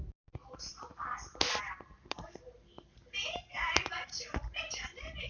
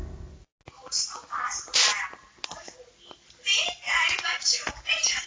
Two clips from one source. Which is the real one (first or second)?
second